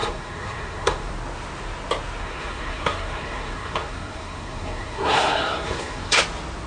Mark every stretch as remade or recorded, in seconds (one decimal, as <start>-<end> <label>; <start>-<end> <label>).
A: 0.0-1.1 remade; 1.1-2.2 recorded; 2.2-6.2 remade; 6.2-6.7 recorded